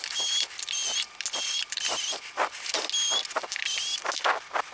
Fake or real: real